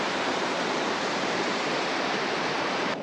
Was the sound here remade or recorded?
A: remade